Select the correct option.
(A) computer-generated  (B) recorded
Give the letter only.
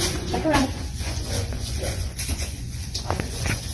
A